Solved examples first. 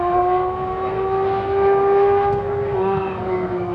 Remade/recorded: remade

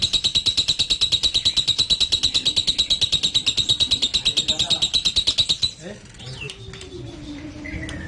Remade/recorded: recorded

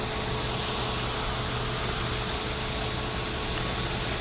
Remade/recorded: recorded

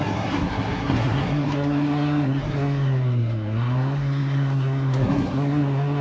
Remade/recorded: remade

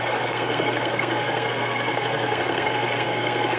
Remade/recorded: remade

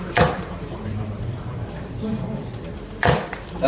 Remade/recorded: remade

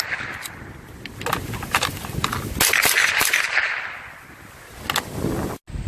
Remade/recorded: recorded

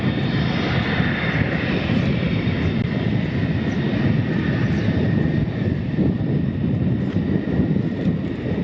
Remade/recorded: recorded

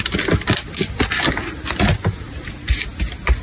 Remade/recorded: recorded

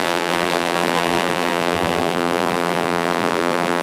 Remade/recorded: remade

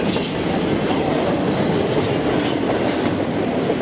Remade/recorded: recorded